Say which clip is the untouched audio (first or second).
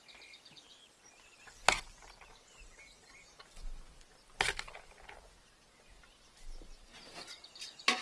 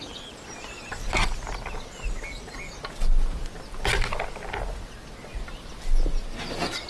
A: second